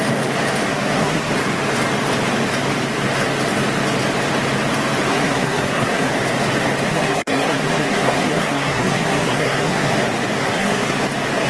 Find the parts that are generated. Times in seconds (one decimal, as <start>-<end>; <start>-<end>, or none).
0.7-1.3; 5.1-6.1; 6.9-9.9; 10.4-11.0